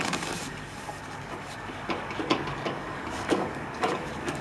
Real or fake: fake